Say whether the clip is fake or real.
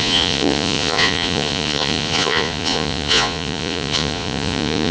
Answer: fake